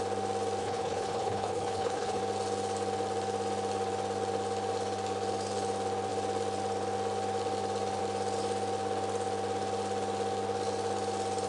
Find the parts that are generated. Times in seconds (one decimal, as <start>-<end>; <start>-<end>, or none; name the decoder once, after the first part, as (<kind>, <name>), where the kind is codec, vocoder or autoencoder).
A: 0.6-2.2 (codec, HILCodec)

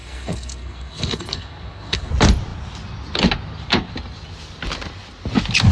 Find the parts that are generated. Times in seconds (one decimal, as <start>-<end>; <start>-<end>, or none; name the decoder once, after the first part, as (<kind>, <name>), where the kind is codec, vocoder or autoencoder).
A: 0.0-2.1 (codec, SNAC)